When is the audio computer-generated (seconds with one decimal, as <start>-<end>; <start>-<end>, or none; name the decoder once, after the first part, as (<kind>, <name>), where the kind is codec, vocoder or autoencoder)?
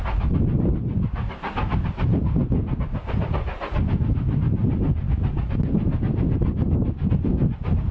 none